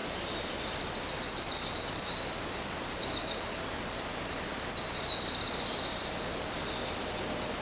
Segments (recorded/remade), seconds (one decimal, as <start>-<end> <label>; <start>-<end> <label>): 0.0-4.1 remade; 4.1-4.5 recorded; 4.5-6.3 remade; 6.3-7.6 recorded